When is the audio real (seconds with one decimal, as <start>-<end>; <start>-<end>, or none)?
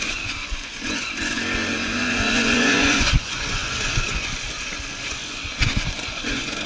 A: none